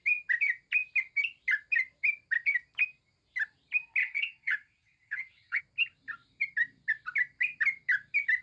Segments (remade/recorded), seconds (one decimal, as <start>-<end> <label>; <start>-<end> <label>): 0.0-4.0 recorded; 4.0-5.6 remade; 5.6-8.4 recorded